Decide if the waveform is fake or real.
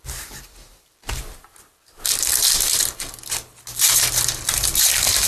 real